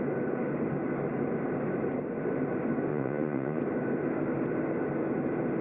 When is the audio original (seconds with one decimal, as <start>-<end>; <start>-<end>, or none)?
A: 0.0-2.9; 3.6-5.6